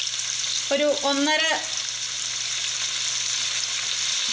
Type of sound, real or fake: real